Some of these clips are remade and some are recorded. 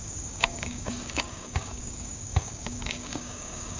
remade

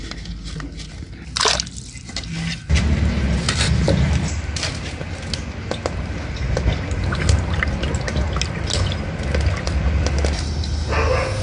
recorded